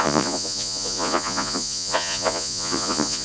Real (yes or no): no